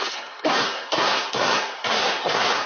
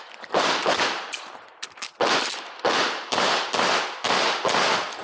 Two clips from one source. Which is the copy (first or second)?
first